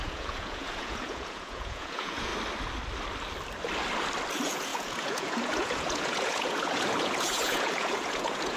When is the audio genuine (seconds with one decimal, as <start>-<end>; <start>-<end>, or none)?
2.3-4.3